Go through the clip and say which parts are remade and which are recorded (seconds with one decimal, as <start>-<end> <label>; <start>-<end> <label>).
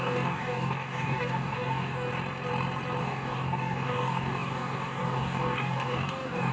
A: 0.0-2.1 remade; 2.1-3.0 recorded; 3.0-6.5 remade